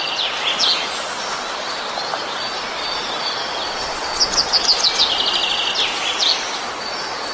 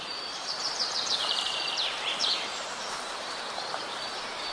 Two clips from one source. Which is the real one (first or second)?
first